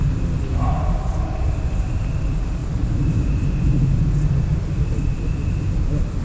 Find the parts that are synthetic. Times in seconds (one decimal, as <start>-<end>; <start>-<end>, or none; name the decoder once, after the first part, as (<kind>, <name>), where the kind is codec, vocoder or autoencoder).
2.6-3.8 (vocoder, BigVGAN v2)